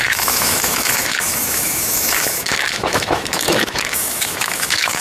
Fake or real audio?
fake